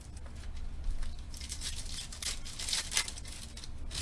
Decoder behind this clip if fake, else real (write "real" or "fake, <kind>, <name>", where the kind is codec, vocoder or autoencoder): real